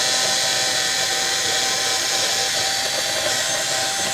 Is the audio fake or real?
real